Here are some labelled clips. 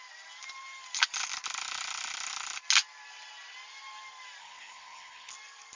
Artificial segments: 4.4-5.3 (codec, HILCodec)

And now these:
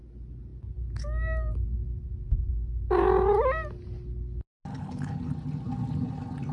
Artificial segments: 4.7-5.3 (codec, HILCodec)

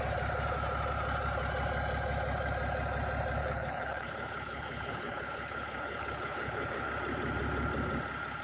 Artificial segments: 3.4-6.9 (codec, HILCodec)